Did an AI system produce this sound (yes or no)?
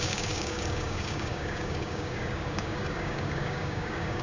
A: yes